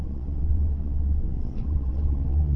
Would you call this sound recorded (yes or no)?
no